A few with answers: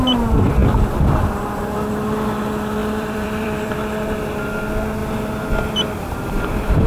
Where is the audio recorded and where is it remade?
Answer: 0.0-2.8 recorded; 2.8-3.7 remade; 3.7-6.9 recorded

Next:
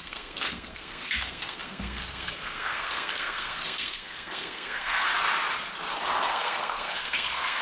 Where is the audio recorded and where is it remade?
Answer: 0.0-5.1 remade; 5.1-6.3 recorded; 6.3-7.6 remade

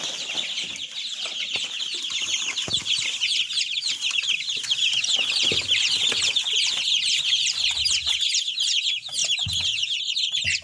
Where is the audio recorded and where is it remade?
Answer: 0.0-10.6 recorded

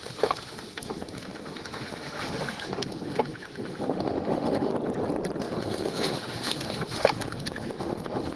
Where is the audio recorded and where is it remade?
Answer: 0.0-4.7 remade; 4.7-5.4 recorded; 5.4-8.4 remade

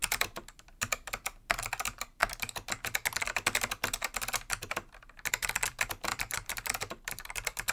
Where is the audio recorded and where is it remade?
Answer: 0.0-1.5 recorded; 1.5-2.2 remade; 2.2-5.3 recorded; 5.3-7.7 remade

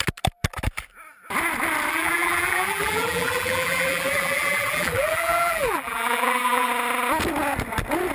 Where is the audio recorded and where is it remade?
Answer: 0.0-1.9 recorded; 1.9-6.7 remade; 6.7-8.1 recorded

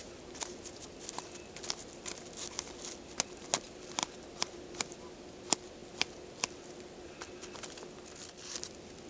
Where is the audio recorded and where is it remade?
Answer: 0.0-1.2 remade; 1.2-4.0 recorded; 4.0-5.1 remade; 5.1-9.1 recorded